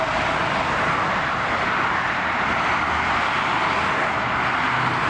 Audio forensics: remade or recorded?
recorded